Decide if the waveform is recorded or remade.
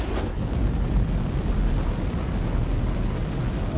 recorded